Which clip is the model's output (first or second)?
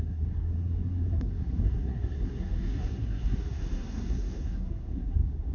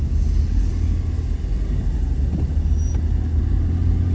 first